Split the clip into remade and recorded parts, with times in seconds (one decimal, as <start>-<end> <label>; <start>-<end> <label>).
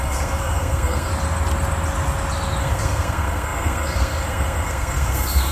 0.0-1.1 remade; 1.1-2.6 recorded; 2.6-5.5 remade